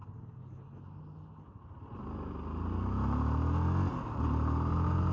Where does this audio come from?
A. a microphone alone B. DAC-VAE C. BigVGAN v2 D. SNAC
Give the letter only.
A